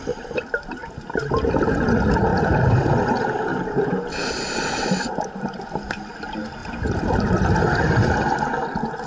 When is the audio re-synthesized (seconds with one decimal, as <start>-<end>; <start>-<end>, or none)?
0.8-1.3; 2.3-2.9; 3.5-6.1